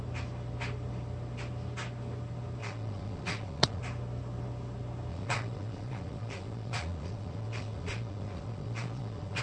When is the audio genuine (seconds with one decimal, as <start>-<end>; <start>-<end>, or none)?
0.0-2.6; 3.8-5.1